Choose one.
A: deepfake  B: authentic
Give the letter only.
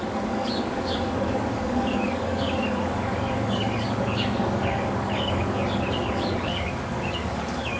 A